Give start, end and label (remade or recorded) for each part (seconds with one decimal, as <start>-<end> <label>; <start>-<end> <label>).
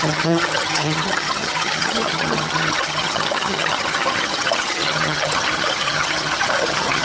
0.0-7.0 remade